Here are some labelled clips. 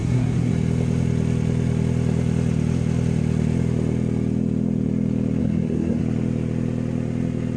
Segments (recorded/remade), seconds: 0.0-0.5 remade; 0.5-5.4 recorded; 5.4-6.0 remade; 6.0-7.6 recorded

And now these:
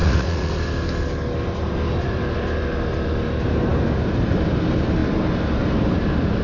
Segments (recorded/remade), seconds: 0.0-0.5 remade; 0.5-6.4 recorded

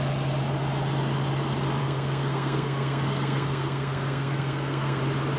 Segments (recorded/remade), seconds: 0.0-1.8 recorded; 1.8-5.0 remade; 5.0-5.4 recorded

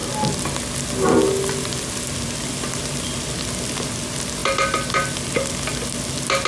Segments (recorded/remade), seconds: 0.0-6.5 recorded

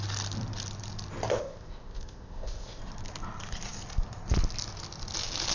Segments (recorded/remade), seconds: 0.0-1.4 recorded; 1.4-2.8 remade; 2.8-5.5 recorded

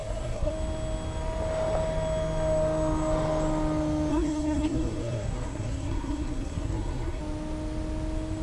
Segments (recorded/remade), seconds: 0.0-0.5 remade; 0.5-4.1 recorded; 4.1-7.2 remade; 7.2-8.4 recorded

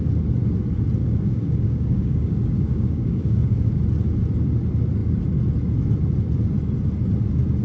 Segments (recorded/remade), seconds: 0.0-1.0 recorded; 1.0-3.7 remade; 3.7-7.6 recorded